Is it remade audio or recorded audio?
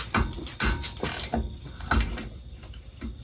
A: recorded